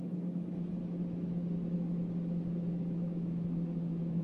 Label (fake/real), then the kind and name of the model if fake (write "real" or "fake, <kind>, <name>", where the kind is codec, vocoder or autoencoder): fake, autoencoder, DAC-VAE